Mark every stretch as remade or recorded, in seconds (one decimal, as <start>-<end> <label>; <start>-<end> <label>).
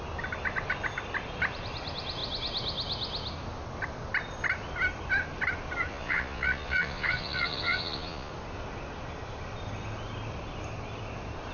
0.0-5.9 recorded; 5.9-8.3 remade; 8.3-11.5 recorded